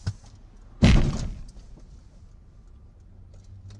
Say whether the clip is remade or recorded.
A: recorded